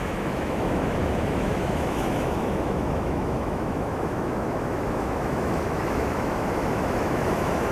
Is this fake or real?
fake